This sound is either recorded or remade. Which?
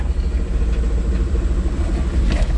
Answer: recorded